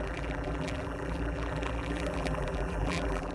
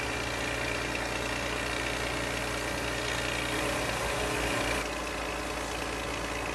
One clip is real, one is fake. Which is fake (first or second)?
first